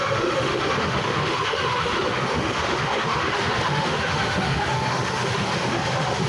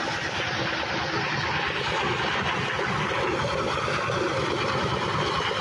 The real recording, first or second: second